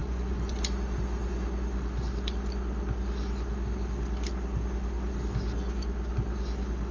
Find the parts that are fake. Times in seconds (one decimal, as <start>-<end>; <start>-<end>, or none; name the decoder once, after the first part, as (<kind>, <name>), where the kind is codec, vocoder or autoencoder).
0.0-0.6 (vocoder, Vocos)